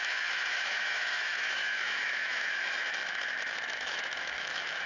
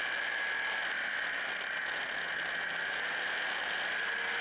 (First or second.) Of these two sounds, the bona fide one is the second